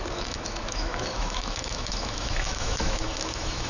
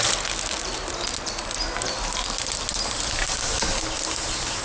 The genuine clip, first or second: second